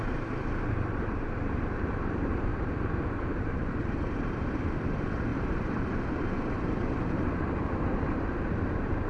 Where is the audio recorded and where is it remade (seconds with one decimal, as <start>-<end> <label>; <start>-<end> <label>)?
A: 0.0-7.3 remade; 7.3-8.1 recorded; 8.1-9.1 remade